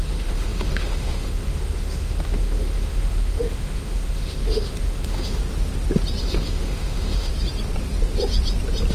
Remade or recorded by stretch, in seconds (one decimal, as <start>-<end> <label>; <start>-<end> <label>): 0.0-5.4 remade; 5.4-6.2 recorded; 6.2-7.3 remade; 7.3-8.9 recorded